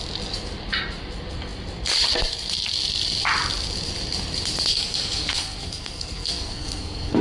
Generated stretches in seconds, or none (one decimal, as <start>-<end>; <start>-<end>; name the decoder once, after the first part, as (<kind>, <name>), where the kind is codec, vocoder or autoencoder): 4.7-7.2 (codec, SNAC)